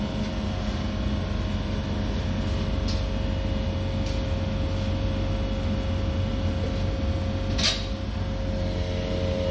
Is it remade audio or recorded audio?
recorded